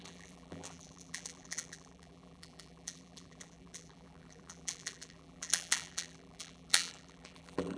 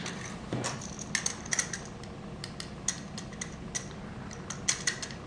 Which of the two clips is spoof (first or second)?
first